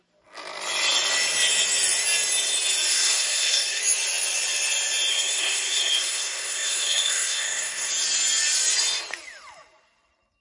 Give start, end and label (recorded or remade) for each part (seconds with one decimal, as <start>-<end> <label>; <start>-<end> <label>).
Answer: 0.0-2.9 recorded; 2.9-3.8 remade; 3.8-5.1 recorded; 5.1-7.9 remade; 7.9-10.4 recorded